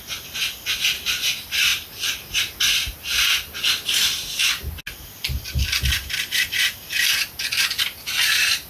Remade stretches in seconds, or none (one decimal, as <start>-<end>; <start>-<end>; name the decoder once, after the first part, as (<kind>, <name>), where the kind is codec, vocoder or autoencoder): none